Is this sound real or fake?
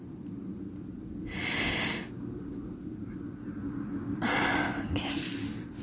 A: real